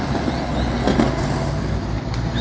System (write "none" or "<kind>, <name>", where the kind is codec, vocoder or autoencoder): none